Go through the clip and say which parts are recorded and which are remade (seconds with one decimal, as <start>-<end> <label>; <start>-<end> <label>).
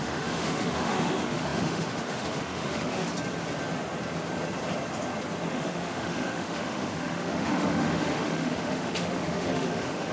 0.0-3.1 remade; 3.1-5.5 recorded; 5.5-10.1 remade